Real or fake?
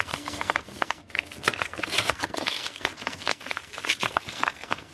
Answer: fake